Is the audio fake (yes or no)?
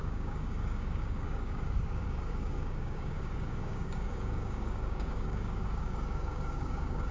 yes